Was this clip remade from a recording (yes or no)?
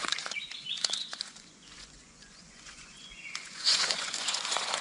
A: yes